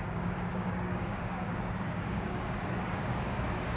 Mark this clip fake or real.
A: fake